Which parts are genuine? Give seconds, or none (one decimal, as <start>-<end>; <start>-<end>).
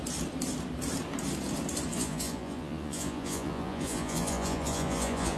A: 0.0-1.9